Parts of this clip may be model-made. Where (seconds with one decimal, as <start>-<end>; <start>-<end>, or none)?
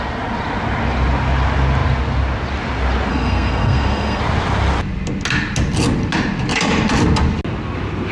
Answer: 3.1-4.2